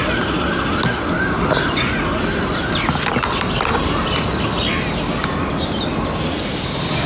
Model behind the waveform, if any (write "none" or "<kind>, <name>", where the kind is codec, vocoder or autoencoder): none